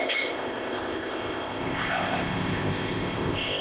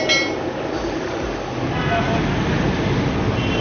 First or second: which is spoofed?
first